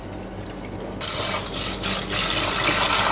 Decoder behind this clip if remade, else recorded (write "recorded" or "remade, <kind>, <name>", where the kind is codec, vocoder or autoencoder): recorded